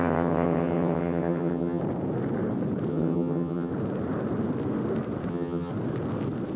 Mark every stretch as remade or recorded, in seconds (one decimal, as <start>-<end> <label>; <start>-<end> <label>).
0.0-1.8 remade; 1.8-2.9 recorded; 2.9-3.7 remade; 3.7-5.3 recorded; 5.3-5.7 remade; 5.7-6.6 recorded